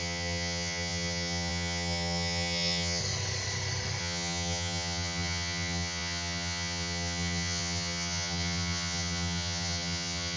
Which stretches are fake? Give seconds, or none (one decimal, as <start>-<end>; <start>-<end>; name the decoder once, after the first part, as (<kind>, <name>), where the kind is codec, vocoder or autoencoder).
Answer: 0.0-3.0 (vocoder, HiFi-GAN); 4.0-10.4